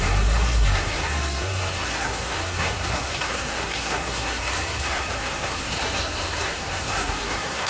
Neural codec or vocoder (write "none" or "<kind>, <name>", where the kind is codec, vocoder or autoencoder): codec, SNAC